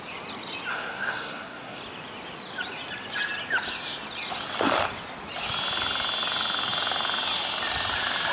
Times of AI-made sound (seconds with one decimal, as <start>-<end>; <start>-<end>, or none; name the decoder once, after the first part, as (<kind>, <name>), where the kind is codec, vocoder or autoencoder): 0.7-1.8 (codec, SNAC)